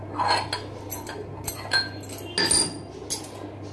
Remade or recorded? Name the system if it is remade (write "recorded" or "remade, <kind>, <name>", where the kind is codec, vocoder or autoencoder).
recorded